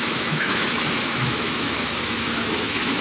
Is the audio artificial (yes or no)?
yes